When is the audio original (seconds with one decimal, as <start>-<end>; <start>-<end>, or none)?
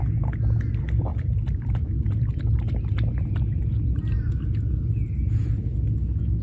0.0-1.1; 4.9-6.4